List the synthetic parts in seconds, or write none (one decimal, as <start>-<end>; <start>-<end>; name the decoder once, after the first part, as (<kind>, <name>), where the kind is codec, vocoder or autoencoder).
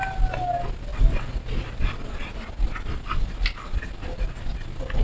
none